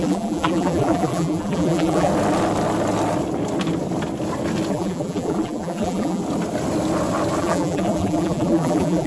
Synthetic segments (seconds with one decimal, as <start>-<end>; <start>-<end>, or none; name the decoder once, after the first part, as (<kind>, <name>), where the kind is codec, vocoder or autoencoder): 0.0-2.1 (vocoder, BigVGAN v2); 4.7-6.2; 7.4-9.1